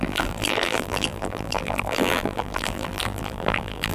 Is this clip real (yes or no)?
no